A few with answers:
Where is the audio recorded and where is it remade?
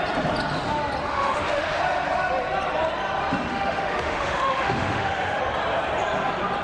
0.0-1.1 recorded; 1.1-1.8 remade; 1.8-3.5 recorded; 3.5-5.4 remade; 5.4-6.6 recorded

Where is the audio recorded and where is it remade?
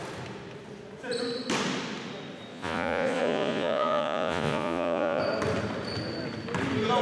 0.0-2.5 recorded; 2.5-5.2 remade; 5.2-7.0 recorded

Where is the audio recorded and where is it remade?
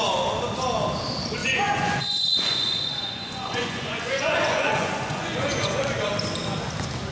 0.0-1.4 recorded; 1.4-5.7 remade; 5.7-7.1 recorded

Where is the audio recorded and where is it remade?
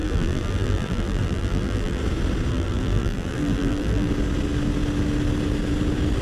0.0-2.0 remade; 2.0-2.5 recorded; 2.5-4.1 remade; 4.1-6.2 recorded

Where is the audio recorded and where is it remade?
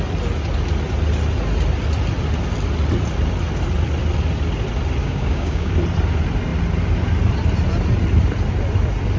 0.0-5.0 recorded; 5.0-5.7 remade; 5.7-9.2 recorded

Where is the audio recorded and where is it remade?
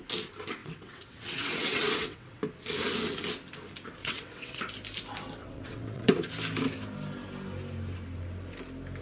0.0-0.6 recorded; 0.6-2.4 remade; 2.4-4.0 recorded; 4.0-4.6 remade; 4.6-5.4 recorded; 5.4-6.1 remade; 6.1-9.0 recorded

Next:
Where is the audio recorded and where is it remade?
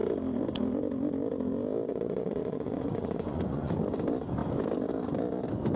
0.0-1.9 recorded; 1.9-3.7 remade; 3.7-5.8 recorded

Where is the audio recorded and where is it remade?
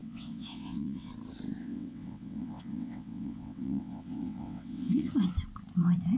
0.0-1.1 remade; 1.1-1.6 recorded; 1.6-5.1 remade; 5.1-6.2 recorded